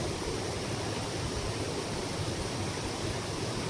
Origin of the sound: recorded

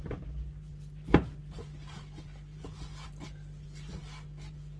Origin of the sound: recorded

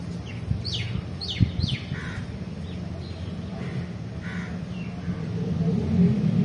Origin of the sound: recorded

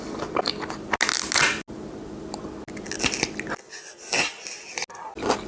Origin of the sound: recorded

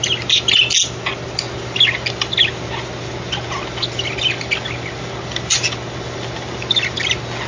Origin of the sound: recorded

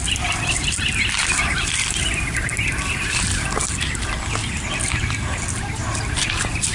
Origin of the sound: recorded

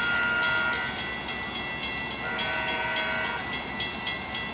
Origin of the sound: recorded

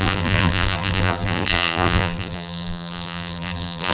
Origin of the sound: remade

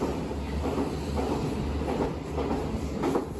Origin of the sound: recorded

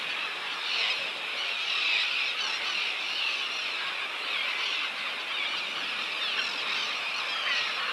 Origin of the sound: recorded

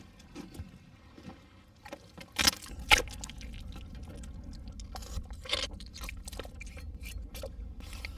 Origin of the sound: recorded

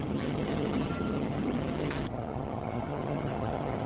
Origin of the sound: remade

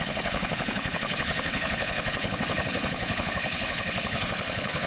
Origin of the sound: remade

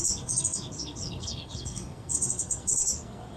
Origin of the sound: remade